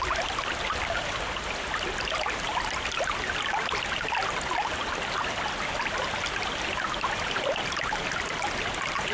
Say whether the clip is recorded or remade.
recorded